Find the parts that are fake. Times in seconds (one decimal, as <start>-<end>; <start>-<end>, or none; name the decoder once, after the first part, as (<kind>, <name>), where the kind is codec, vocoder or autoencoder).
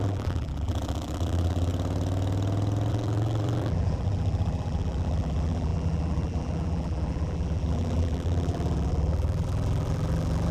0.0-1.7 (vocoder, BigVGAN v2); 2.9-10.5